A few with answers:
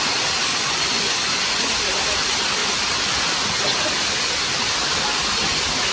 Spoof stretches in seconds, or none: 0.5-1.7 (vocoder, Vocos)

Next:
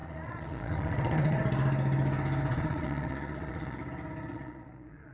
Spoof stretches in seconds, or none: 0.0-1.4 (vocoder, Vocos); 2.5-3.8; 4.3-5.1

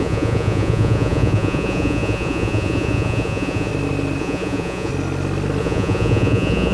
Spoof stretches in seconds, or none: 0.0-3.7 (vocoder, Vocos); 4.2-4.9; 5.6-6.7

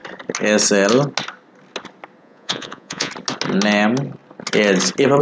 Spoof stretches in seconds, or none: 2.2-3.1 (vocoder, Vocos)

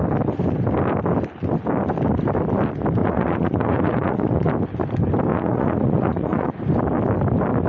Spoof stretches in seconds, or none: 3.0-4.5 (vocoder, Vocos); 5.3-6.6